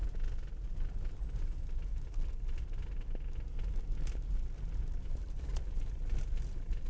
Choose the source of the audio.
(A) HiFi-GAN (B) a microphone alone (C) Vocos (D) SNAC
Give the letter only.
B